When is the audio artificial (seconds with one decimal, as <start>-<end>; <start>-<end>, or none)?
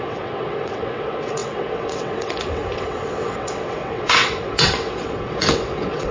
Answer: 0.0-6.1